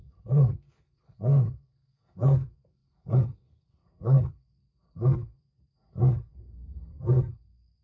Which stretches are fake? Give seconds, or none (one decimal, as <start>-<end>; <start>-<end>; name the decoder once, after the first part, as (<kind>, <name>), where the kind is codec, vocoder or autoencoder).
0.0-7.8 (codec, SNAC)